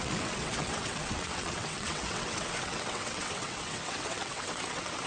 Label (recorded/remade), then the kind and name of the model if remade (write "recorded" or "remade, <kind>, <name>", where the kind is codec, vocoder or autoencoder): remade, vocoder, WaveNeXt